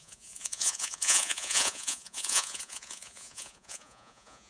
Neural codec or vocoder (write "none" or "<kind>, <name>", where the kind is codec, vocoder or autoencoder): vocoder, Vocos